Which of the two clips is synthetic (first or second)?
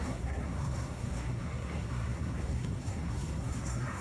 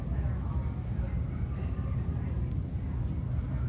first